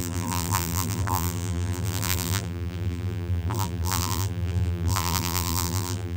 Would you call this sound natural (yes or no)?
no